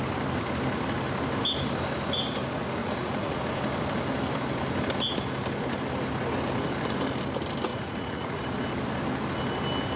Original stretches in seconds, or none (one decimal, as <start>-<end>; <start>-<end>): 0.0-2.8; 3.4-7.7; 8.4-10.0